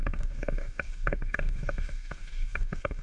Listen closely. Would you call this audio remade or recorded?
remade